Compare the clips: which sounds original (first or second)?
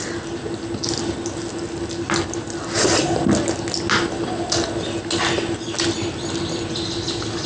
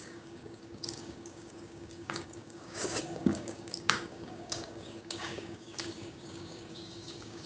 first